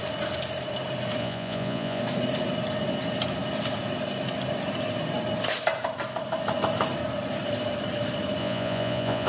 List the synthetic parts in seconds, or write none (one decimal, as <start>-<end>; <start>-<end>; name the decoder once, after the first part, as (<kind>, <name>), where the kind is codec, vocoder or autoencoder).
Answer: 1.2-2.0 (vocoder, Vocos); 8.4-9.3